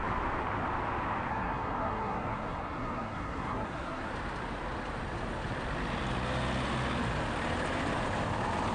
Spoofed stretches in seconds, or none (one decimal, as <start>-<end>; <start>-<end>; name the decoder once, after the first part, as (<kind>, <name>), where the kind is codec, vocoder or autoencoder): 1.3-4.1 (codec, SNAC)